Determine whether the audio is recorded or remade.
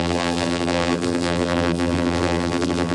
remade